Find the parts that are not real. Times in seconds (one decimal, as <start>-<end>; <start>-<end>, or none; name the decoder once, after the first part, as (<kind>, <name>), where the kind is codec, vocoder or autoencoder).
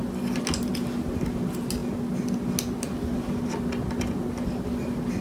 none